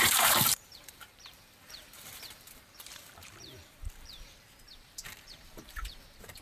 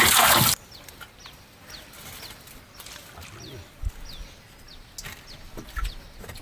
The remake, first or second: first